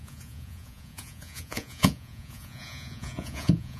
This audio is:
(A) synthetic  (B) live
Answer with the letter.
A